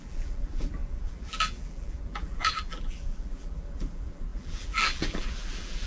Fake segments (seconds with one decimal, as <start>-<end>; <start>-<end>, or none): 0.0-5.9